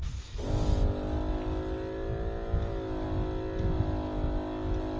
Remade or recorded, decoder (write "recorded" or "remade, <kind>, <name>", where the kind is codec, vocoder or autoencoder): recorded